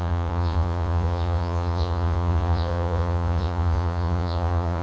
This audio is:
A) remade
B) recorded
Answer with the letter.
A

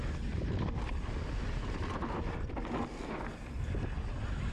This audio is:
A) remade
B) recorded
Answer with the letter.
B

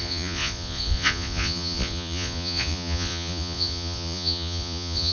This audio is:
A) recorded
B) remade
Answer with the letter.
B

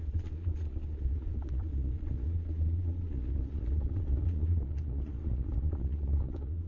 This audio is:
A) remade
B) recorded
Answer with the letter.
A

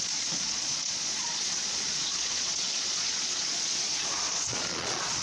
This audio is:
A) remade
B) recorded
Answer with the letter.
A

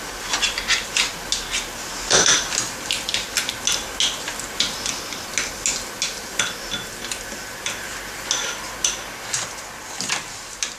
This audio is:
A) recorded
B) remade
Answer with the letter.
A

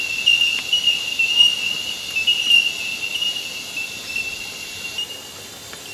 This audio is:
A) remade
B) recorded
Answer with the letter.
B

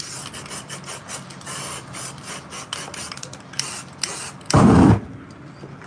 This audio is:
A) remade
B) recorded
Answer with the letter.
B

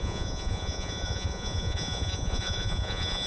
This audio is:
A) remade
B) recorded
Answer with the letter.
A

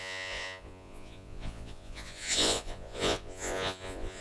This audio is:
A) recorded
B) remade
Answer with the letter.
B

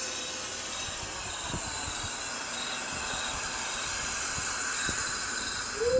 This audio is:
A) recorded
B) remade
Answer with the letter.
A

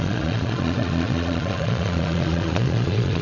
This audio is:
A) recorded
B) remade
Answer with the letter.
B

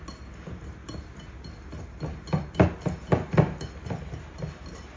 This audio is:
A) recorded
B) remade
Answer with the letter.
A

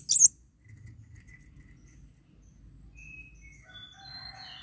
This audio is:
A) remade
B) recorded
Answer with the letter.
B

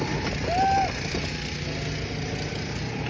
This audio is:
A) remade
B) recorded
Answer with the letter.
B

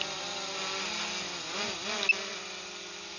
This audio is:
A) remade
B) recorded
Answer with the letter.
B